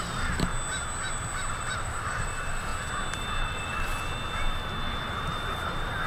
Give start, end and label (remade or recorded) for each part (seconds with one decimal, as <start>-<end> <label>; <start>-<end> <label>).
0.0-0.5 remade; 0.5-1.5 recorded; 1.5-2.7 remade; 2.7-3.2 recorded; 3.2-3.9 remade; 3.9-5.0 recorded; 5.0-6.1 remade